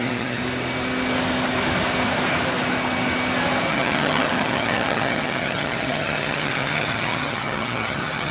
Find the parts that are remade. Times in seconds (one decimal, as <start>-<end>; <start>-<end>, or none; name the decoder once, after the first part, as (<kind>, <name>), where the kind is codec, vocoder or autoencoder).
0.0-0.4 (vocoder, HiFi-GAN); 3.7-8.3